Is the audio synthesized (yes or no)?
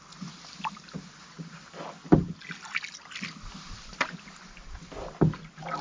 no